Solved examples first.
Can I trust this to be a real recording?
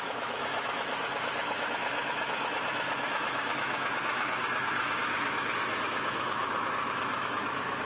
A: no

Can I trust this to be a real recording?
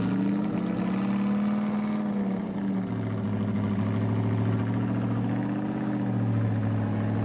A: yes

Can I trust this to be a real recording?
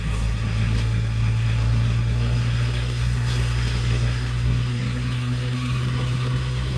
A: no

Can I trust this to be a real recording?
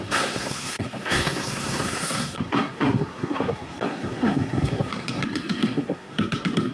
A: no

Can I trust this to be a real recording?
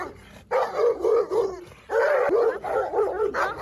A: yes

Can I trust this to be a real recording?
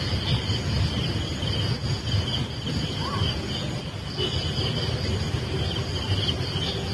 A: yes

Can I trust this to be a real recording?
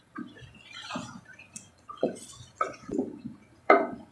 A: no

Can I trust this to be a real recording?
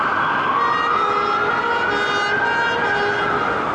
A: yes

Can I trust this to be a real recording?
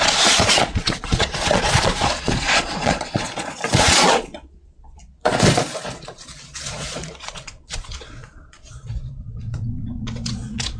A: no